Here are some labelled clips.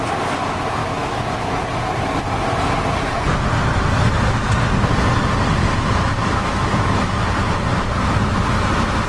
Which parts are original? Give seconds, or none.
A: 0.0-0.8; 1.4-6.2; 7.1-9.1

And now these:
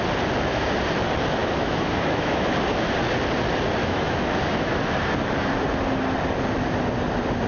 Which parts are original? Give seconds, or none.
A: 0.0-1.4; 2.5-3.8; 4.8-7.5

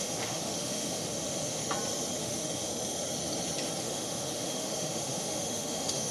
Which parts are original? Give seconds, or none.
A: 1.6-2.2; 2.7-3.8

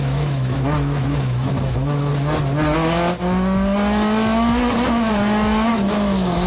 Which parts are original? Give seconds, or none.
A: 2.1-5.7

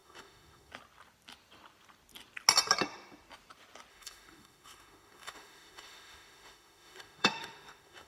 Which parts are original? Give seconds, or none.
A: 0.7-3.9